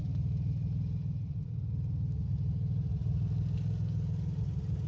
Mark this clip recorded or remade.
recorded